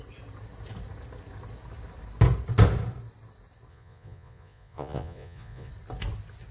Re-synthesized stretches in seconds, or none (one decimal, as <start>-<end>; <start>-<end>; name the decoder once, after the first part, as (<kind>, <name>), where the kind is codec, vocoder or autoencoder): 3.7-5.7 (vocoder, Vocos)